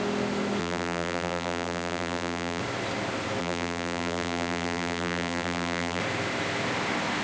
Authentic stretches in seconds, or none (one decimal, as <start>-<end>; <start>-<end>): 0.0-0.6; 2.6-3.4; 6.0-7.2